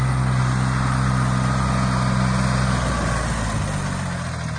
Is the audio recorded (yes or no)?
yes